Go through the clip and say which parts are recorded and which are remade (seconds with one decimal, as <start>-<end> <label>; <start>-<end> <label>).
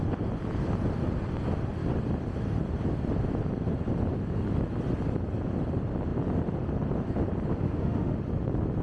0.0-7.5 recorded; 7.5-8.2 remade; 8.2-8.8 recorded